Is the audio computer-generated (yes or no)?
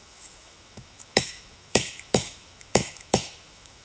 yes